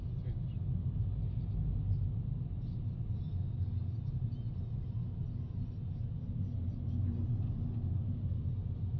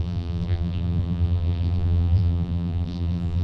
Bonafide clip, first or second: first